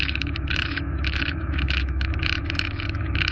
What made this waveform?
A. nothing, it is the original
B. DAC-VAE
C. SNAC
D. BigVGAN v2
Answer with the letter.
B